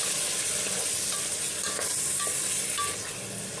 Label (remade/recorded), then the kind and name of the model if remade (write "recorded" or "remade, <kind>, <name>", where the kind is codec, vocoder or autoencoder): recorded